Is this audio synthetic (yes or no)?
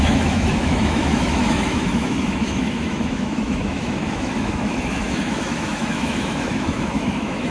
yes